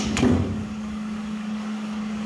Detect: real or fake fake